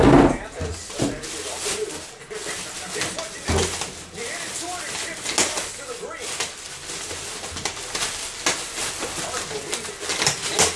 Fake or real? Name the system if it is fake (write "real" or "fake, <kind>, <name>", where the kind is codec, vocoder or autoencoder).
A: real